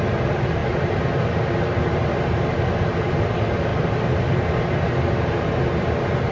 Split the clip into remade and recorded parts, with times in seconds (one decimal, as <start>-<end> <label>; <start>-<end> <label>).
0.0-6.3 recorded